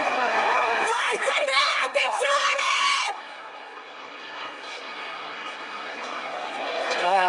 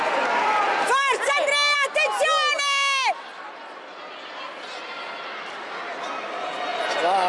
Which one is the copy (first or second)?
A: first